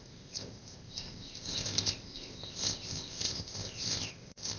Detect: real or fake fake